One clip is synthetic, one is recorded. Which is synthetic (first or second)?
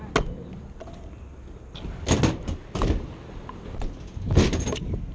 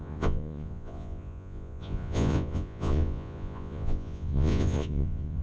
second